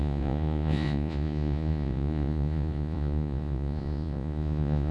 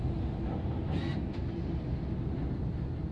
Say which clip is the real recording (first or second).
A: second